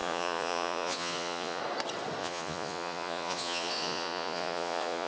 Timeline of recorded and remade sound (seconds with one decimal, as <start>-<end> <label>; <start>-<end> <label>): 0.0-1.6 remade; 1.6-2.2 recorded; 2.2-5.1 remade